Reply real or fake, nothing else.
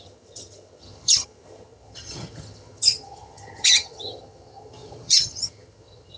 fake